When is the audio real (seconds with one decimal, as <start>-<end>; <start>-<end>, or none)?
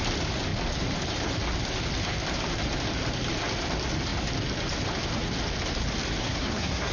0.0-6.2